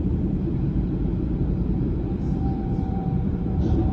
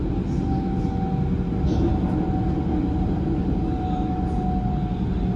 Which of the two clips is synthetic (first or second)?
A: first